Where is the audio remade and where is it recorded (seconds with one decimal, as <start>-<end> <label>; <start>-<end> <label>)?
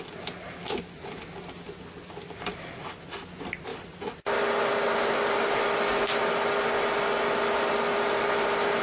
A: 0.0-8.8 recorded